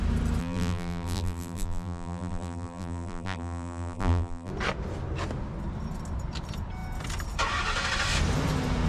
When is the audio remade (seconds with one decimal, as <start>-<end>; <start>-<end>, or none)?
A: 0.4-4.5